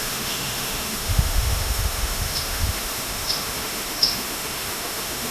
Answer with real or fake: fake